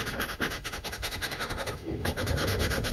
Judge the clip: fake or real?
fake